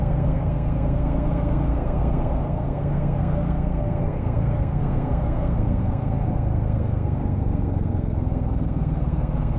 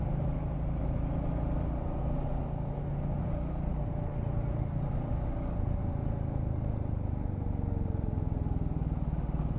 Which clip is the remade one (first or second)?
first